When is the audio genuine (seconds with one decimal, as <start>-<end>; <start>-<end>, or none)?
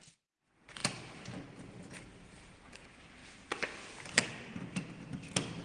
0.0-5.6